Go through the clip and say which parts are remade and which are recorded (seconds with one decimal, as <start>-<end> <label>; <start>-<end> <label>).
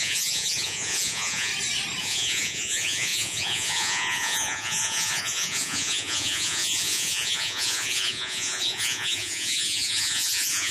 0.0-1.5 remade; 1.5-2.0 recorded; 2.0-10.7 remade